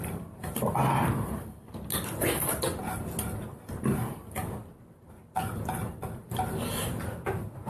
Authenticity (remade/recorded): recorded